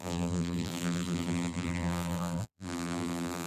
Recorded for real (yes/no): no